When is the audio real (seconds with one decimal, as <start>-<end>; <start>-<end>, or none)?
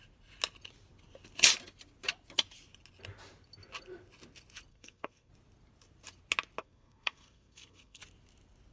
0.0-4.7; 5.3-6.6; 8.0-8.7